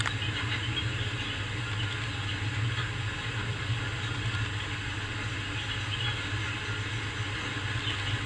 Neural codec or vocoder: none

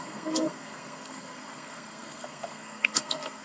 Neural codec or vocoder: codec, SNAC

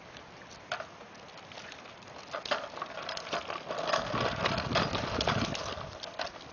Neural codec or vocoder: none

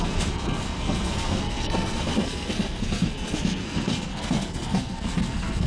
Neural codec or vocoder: codec, SNAC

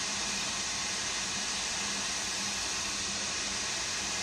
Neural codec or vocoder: none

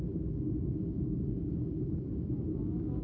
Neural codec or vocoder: codec, DAC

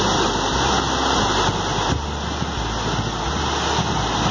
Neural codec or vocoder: none